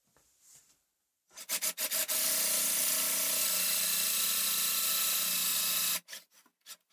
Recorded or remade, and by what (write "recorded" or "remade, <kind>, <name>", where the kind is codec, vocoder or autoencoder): recorded